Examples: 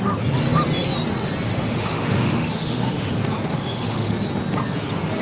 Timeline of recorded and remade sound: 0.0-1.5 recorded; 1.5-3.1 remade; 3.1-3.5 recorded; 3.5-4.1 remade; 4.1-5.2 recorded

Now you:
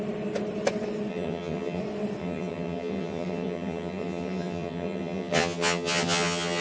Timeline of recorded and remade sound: 0.0-1.1 recorded; 1.1-1.8 remade; 1.8-2.2 recorded; 2.2-6.6 remade

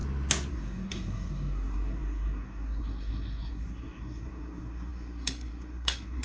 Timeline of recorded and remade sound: 0.0-0.5 recorded; 0.5-6.2 remade

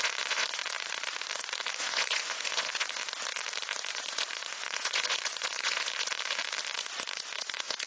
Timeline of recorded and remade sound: 0.0-0.6 remade; 0.6-1.8 recorded; 1.8-3.0 remade; 3.0-3.9 recorded; 3.9-6.4 remade; 6.4-7.1 recorded; 7.1-7.9 remade

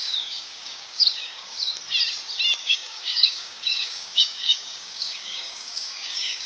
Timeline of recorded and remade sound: 0.0-1.7 remade; 1.7-2.6 recorded; 2.6-6.5 remade